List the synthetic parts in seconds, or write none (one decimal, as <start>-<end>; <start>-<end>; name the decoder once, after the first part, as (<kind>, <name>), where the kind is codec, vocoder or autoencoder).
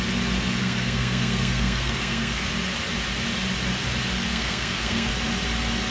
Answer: 0.6-2.5 (codec, SNAC); 4.3-5.1